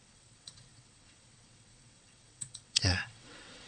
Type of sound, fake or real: fake